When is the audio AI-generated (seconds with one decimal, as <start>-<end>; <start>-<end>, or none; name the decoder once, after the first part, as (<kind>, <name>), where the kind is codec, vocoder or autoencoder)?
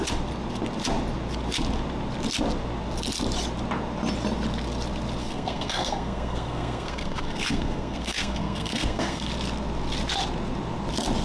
5.2-9.3 (codec, SNAC)